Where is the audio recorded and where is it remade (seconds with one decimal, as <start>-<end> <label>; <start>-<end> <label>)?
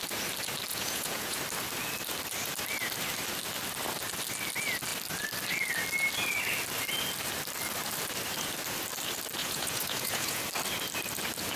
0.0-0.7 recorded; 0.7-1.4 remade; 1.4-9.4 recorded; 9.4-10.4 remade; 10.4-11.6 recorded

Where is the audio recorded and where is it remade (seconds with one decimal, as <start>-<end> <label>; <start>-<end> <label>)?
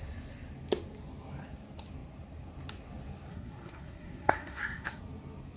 0.0-3.3 recorded; 3.3-5.0 remade; 5.0-5.6 recorded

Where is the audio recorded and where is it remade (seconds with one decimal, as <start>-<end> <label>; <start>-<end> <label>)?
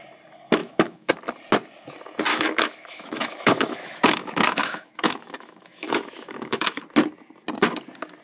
0.0-0.6 recorded; 0.6-1.1 remade; 1.1-2.3 recorded; 2.3-6.8 remade; 6.8-8.2 recorded